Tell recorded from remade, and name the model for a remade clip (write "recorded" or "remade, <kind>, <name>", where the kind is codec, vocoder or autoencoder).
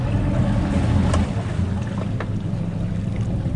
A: recorded